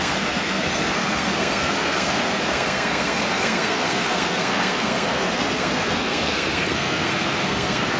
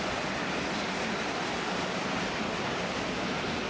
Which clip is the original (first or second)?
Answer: second